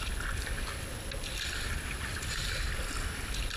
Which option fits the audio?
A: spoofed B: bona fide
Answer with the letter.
B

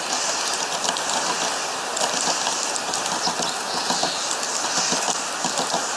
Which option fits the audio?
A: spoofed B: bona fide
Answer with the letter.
B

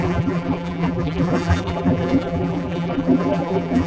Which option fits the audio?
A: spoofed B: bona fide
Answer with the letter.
A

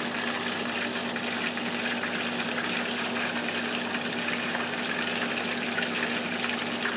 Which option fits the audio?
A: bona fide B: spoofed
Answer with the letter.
A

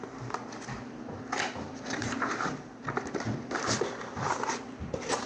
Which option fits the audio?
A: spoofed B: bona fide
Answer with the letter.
A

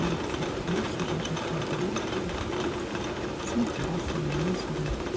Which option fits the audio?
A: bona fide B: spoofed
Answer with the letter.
B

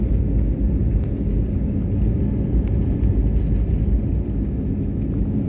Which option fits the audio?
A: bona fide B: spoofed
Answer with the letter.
A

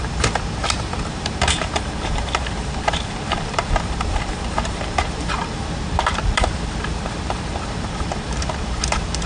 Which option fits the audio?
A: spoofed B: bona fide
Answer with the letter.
A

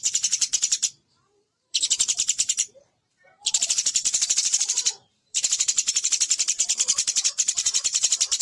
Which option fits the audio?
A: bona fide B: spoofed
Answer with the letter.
B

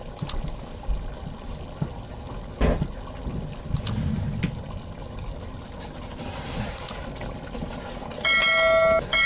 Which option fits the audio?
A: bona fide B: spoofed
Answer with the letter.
A